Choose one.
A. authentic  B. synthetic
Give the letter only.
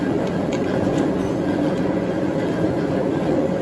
B